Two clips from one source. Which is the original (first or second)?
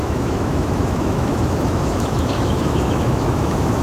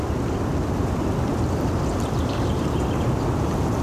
second